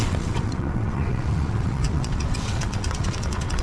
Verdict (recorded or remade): remade